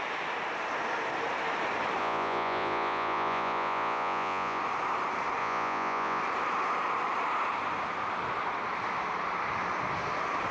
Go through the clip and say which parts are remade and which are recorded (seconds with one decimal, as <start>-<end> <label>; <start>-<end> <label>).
0.0-2.0 recorded; 2.0-4.6 remade; 4.6-5.4 recorded; 5.4-6.2 remade; 6.2-10.5 recorded

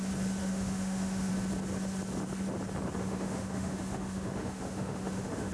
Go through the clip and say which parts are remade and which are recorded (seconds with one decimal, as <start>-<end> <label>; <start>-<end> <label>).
0.0-0.4 recorded; 0.4-1.3 remade; 1.3-3.0 recorded; 3.0-5.5 remade

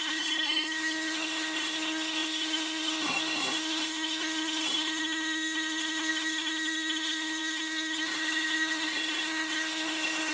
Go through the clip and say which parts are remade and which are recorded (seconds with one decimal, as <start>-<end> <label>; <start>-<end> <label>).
0.0-10.3 remade

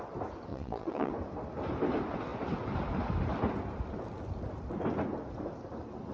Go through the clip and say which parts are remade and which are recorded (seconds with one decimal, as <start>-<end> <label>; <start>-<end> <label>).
0.0-0.5 recorded; 0.5-1.1 remade; 1.1-6.1 recorded

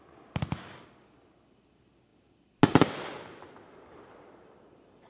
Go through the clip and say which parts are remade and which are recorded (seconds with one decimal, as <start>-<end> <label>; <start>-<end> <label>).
0.0-5.1 recorded